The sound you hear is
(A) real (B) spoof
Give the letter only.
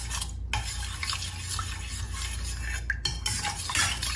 A